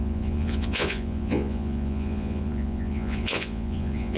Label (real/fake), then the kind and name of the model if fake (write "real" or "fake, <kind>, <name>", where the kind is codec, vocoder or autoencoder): fake, vocoder, Vocos